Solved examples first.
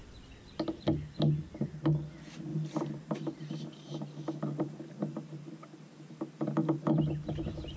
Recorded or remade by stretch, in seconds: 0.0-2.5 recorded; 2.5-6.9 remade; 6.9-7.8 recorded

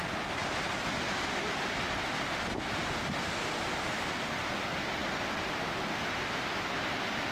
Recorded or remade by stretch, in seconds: 0.0-0.4 recorded; 0.4-1.6 remade; 1.6-7.3 recorded

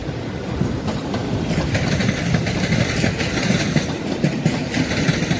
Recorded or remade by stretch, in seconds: 0.0-0.7 recorded; 0.7-5.4 remade

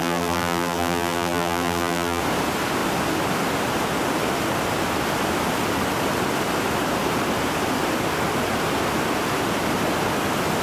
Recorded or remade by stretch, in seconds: 0.0-2.2 remade; 2.2-10.6 recorded

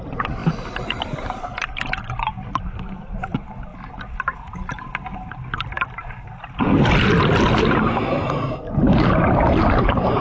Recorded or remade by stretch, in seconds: 0.0-0.4 remade; 0.4-1.4 recorded; 1.4-3.7 remade; 3.7-5.3 recorded; 5.3-5.7 remade; 5.7-8.9 recorded; 8.9-10.2 remade

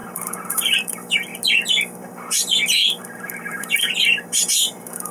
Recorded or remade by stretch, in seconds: 0.0-1.3 remade; 1.3-2.1 recorded; 2.1-5.1 remade

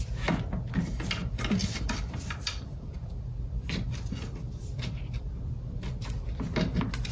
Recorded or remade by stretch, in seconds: 0.0-1.6 recorded; 1.6-5.9 remade; 5.9-7.1 recorded